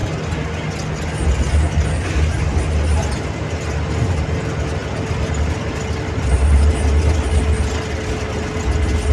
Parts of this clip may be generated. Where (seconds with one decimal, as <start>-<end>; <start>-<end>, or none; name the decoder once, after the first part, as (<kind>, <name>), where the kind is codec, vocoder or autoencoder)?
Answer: none